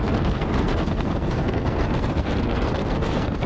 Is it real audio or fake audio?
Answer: fake